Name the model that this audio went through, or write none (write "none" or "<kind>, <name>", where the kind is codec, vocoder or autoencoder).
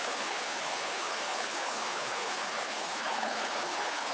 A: codec, HILCodec